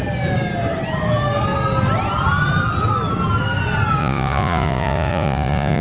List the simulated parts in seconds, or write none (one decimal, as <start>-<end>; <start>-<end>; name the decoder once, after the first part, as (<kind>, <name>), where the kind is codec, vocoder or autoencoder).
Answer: 4.0-5.8 (vocoder, Vocos)